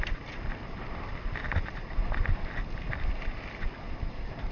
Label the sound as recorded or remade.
recorded